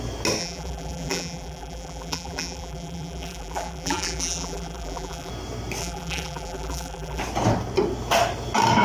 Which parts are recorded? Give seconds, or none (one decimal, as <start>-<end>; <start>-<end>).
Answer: 0.0-0.4; 5.3-5.8; 7.2-8.8